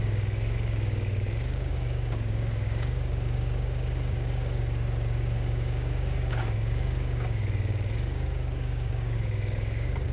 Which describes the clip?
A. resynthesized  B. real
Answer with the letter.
A